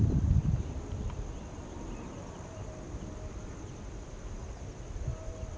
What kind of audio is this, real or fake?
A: real